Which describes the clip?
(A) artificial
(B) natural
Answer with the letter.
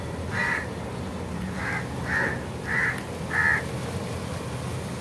B